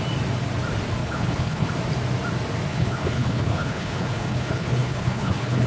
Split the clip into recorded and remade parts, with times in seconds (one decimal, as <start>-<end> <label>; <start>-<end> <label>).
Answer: 0.0-1.0 recorded; 1.0-1.7 remade; 1.7-2.7 recorded; 2.7-5.7 remade